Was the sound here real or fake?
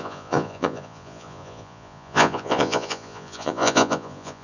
fake